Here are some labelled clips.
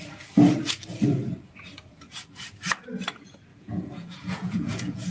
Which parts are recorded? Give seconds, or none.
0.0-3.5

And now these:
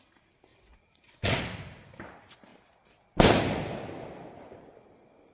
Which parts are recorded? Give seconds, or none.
0.0-0.5; 1.4-5.3

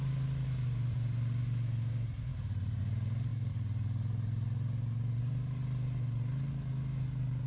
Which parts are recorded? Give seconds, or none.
0.0-2.3; 2.8-7.5